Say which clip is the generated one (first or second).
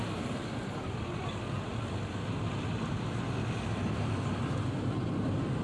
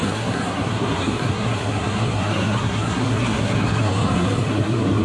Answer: second